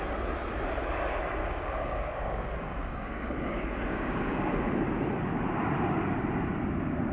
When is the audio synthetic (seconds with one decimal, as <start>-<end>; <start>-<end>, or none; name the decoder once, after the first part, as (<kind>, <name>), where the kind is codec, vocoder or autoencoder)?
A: 1.4-4.5 (codec, DAC)